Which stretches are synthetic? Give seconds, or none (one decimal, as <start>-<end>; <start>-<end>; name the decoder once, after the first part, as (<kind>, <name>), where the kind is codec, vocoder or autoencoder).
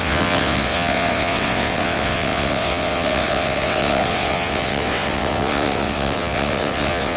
0.0-7.2 (vocoder, WaveNeXt)